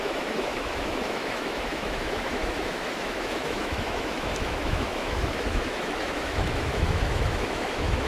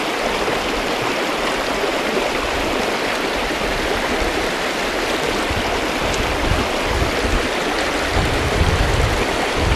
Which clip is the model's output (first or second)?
first